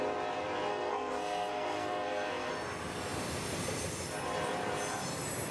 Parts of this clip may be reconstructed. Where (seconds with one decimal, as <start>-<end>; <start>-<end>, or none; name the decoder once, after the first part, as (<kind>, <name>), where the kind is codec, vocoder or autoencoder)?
0.7-2.5 (codec, SNAC)